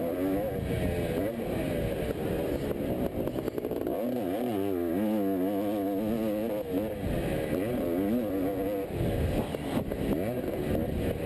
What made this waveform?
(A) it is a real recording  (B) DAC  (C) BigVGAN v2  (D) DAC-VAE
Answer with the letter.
A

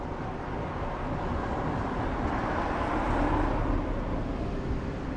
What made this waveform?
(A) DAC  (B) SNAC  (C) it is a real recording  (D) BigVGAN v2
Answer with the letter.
C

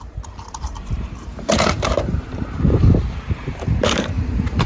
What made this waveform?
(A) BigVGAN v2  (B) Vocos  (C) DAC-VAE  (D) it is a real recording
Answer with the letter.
A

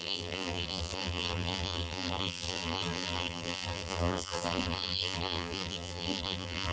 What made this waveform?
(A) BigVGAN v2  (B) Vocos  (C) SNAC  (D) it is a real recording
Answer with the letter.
A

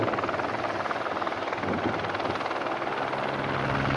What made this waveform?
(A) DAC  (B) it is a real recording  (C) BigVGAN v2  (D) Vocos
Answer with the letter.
B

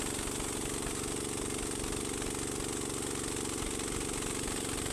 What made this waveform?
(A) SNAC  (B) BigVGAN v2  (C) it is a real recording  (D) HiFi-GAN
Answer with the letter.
C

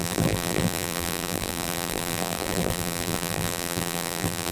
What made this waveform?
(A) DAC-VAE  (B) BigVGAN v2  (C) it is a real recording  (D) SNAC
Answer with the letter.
B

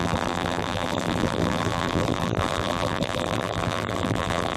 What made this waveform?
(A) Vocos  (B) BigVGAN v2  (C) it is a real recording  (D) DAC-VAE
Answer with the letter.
B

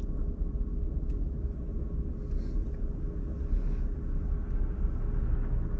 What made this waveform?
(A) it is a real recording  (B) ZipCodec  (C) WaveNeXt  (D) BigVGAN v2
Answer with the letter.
A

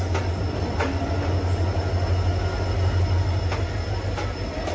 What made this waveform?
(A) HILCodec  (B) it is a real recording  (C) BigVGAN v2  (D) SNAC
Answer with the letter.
B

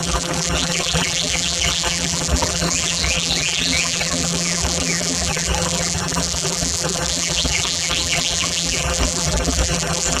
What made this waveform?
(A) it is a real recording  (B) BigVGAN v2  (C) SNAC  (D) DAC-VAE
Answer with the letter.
B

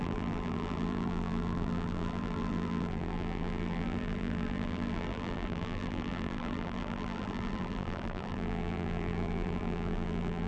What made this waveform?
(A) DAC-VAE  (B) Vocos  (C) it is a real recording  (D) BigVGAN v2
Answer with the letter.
D